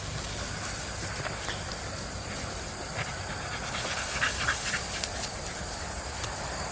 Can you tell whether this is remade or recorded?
recorded